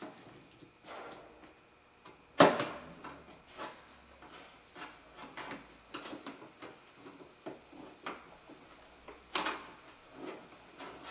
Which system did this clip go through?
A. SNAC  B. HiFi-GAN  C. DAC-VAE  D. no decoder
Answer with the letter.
D